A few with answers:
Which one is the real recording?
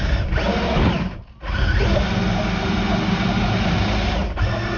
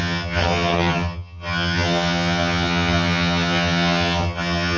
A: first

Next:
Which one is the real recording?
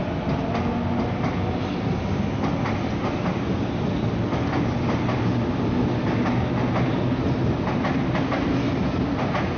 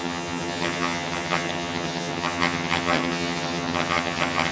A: first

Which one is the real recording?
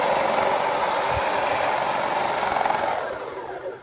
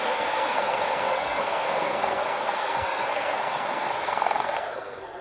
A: first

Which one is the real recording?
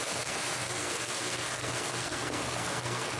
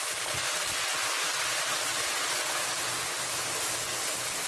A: second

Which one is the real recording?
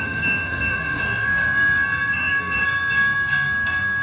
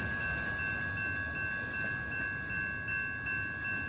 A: second